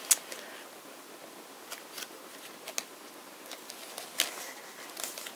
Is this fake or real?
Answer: real